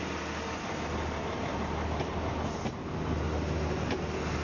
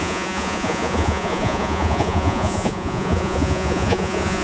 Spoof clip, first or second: second